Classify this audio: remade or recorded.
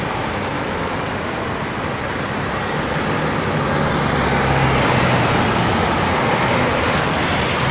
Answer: recorded